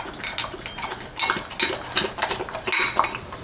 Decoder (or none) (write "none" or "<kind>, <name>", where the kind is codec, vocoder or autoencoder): none